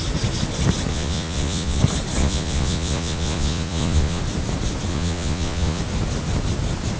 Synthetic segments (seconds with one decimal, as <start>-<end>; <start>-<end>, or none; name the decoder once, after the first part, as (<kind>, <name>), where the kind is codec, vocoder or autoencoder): 0.9-1.8 (vocoder, Vocos); 2.2-4.2; 4.9-5.8